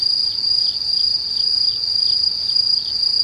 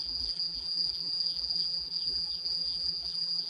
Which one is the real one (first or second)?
first